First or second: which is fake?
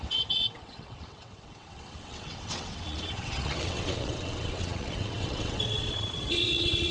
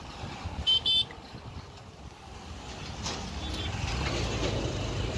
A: first